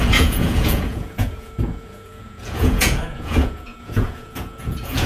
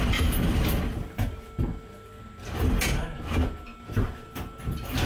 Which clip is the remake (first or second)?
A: first